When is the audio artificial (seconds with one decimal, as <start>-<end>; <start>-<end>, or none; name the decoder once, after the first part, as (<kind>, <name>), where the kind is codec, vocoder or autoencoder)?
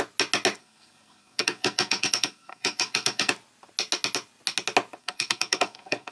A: 0.6-3.3 (codec, SNAC); 5.0-6.1